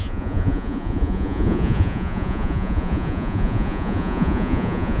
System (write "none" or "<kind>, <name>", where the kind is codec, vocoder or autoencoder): vocoder, Vocos